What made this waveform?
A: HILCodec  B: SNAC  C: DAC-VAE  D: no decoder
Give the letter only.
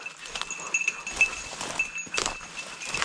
D